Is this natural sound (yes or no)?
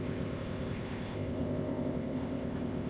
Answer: no